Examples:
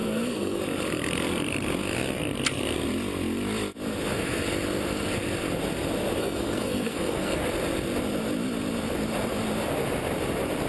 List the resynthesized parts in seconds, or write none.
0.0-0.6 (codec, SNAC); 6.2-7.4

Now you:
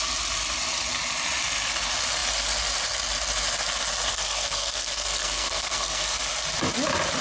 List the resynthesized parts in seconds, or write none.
4.1-6.3 (codec, SNAC)

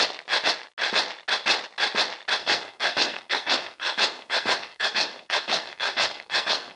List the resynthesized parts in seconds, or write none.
2.4-6.8 (codec, SNAC)

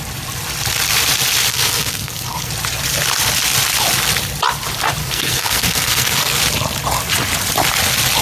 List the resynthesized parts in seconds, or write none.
1.5-2.5 (codec, SNAC); 5.0-6.4